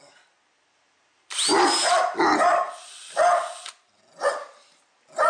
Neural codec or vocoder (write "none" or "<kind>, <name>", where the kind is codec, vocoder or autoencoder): none